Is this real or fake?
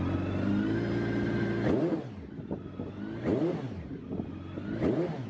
real